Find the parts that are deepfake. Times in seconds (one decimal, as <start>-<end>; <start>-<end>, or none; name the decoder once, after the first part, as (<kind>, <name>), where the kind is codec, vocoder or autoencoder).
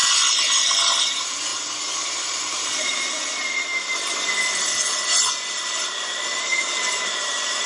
1.0-1.5 (vocoder, BigVGAN v2); 2.2-3.7; 5.5-7.7